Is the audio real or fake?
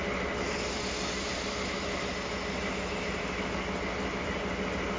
real